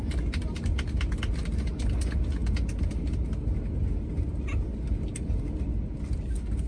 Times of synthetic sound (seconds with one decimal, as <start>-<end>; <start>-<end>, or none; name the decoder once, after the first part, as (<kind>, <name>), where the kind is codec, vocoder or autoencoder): none